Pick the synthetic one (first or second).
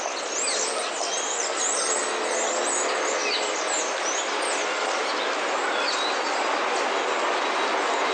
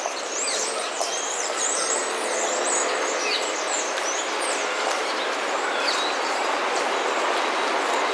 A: second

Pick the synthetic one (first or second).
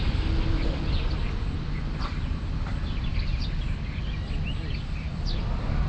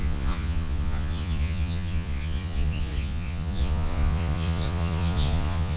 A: second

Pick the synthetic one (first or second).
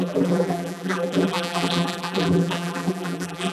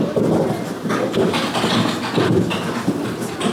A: first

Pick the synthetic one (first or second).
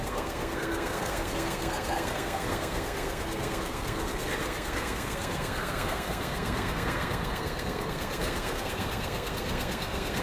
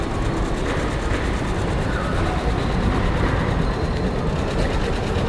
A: first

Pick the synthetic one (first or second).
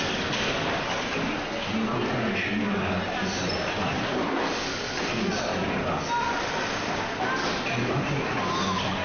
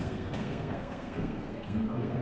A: second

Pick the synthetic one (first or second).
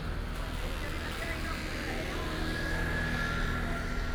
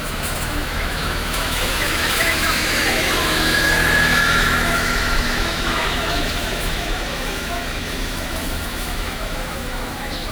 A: second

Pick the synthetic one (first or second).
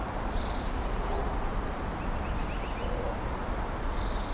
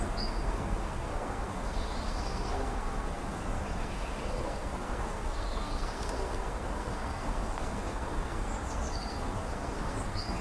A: second